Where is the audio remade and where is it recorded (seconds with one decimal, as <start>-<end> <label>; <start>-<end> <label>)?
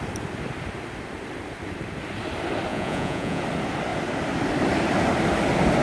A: 0.0-2.7 recorded; 2.7-3.4 remade; 3.4-5.8 recorded